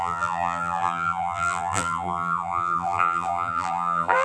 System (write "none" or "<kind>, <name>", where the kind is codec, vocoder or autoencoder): vocoder, BigVGAN v2